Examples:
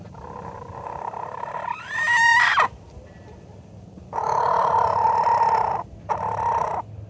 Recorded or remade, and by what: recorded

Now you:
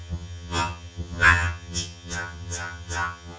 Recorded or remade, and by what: remade, vocoder, HiFi-GAN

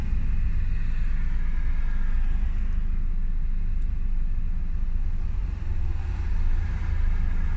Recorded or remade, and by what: recorded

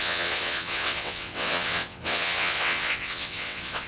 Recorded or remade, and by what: remade, vocoder, WaveNeXt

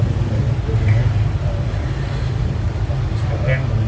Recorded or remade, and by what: recorded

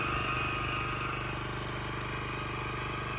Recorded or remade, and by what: recorded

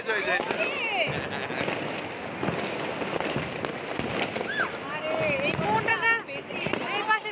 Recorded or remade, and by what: recorded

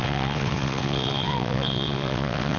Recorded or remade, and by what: remade, vocoder, WaveNeXt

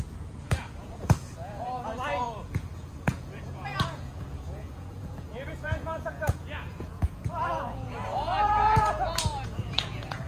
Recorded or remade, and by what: remade, vocoder, Vocos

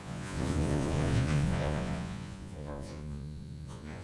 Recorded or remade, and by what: remade, vocoder, Vocos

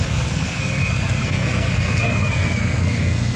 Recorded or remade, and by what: remade, codec, SNAC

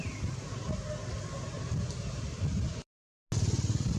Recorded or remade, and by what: recorded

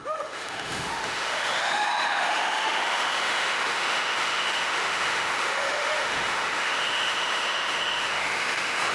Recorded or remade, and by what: remade, autoencoder, DAC-VAE